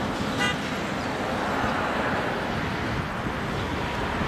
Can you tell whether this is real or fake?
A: real